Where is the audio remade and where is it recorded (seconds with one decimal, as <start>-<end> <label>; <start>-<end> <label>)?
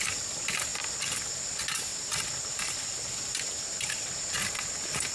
0.0-0.7 remade; 0.7-1.5 recorded; 1.5-1.9 remade; 1.9-5.1 recorded